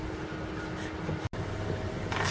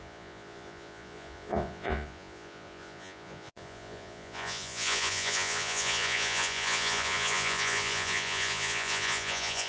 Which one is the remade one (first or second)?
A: second